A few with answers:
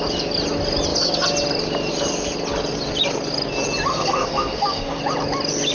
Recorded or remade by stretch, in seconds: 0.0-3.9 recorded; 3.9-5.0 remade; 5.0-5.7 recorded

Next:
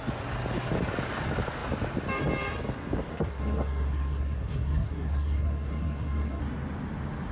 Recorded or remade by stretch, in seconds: 0.0-3.1 recorded; 3.1-6.4 remade; 6.4-7.3 recorded

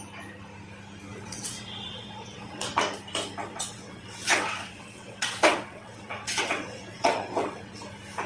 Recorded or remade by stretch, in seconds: 0.0-1.1 recorded; 1.1-2.8 remade; 2.8-3.4 recorded; 3.4-7.9 remade; 7.9-8.3 recorded

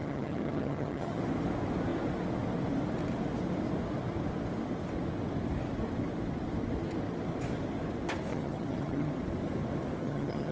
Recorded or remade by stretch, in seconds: 0.0-1.2 remade; 1.2-8.3 recorded; 8.3-9.1 remade; 9.1-10.0 recorded; 10.0-10.5 remade

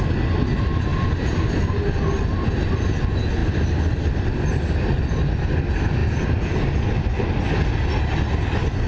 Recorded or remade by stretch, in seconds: 0.0-3.4 recorded; 3.4-4.5 remade; 4.5-6.0 recorded; 6.0-7.2 remade; 7.2-8.9 recorded

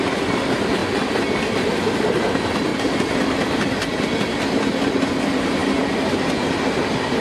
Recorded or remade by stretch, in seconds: 0.0-0.8 remade; 0.8-1.9 recorded; 1.9-2.7 remade; 2.7-4.2 recorded; 4.2-5.6 remade; 5.6-7.2 recorded

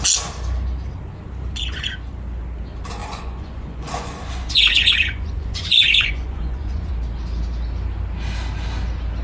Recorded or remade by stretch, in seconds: 0.0-1.6 recorded; 1.6-2.1 remade; 2.1-3.0 recorded; 3.0-6.9 remade; 6.9-9.2 recorded